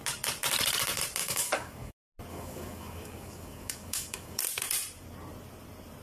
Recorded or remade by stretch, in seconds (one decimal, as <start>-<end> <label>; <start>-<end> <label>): 0.0-1.2 recorded; 1.2-1.9 remade; 1.9-2.3 recorded; 2.3-4.4 remade; 4.4-6.0 recorded